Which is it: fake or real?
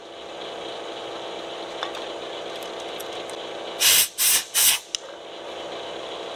real